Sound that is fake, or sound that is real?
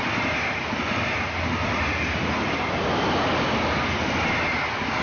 real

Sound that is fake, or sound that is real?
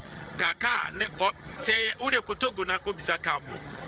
fake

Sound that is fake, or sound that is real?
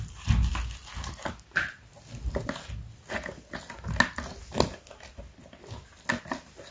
real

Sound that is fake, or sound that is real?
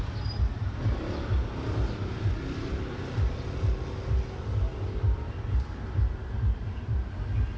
real